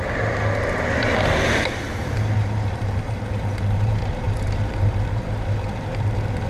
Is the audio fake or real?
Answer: fake